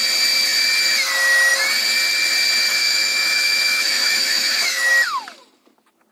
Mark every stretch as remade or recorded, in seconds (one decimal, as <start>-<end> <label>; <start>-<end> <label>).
0.0-2.7 recorded; 2.7-4.9 remade; 4.9-6.1 recorded